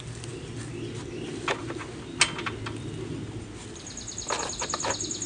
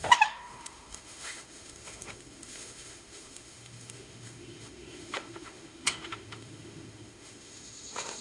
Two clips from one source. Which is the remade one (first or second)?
second